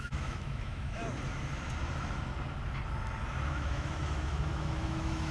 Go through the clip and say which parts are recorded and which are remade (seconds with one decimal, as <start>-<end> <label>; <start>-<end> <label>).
0.0-1.0 remade; 1.0-3.5 recorded; 3.5-5.3 remade